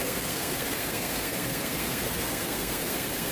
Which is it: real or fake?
fake